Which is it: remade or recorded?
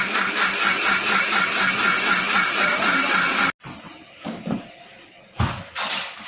recorded